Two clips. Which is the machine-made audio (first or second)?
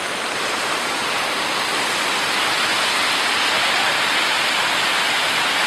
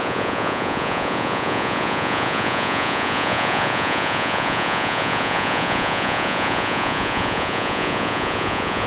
second